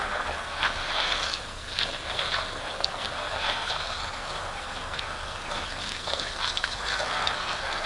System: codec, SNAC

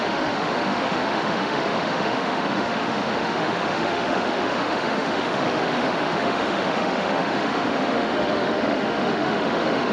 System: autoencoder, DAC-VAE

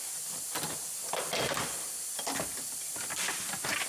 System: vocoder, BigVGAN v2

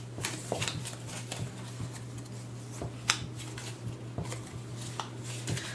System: none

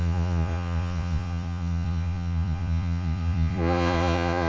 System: vocoder, Vocos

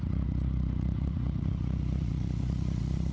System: vocoder, Vocos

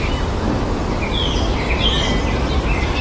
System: none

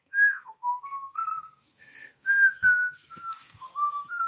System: codec, SNAC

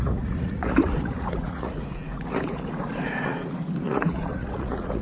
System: vocoder, Vocos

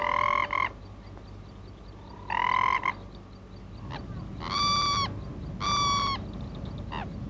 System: none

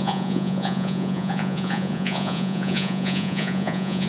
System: vocoder, Vocos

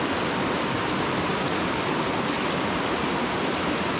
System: none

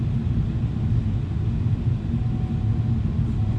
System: none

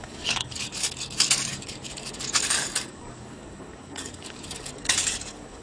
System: codec, DAC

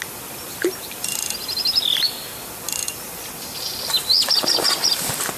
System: none